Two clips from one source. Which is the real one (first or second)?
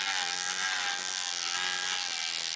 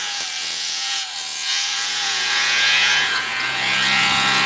first